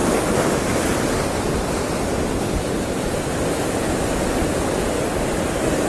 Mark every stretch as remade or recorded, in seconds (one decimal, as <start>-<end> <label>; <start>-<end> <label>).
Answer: 0.0-5.9 recorded